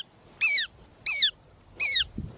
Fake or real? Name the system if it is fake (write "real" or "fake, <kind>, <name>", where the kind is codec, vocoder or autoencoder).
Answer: real